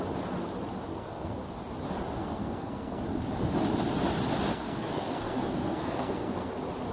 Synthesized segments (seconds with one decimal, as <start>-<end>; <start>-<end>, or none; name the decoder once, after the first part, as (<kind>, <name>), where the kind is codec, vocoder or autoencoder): 0.9-1.5 (codec, SNAC); 2.2-3.0; 4.5-6.5